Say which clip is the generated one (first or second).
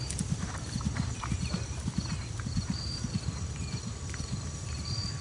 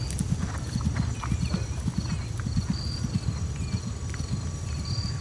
first